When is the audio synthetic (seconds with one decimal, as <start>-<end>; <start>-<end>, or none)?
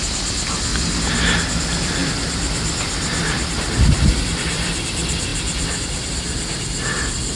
0.0-0.7; 1.6-7.4